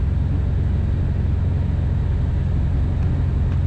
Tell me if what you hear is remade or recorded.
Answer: recorded